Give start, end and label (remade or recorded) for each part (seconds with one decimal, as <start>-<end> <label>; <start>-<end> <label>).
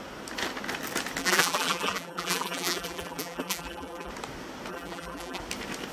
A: 0.0-1.2 recorded; 1.2-4.1 remade; 4.1-4.7 recorded; 4.7-5.4 remade; 5.4-5.9 recorded